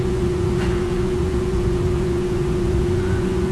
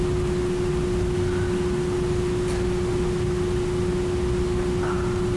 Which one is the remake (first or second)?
first